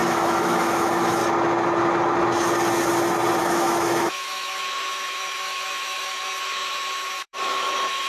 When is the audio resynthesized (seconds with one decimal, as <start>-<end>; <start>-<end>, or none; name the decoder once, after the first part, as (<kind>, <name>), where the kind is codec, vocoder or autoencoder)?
0.0-1.2 (autoencoder, DAC-VAE); 3.4-8.1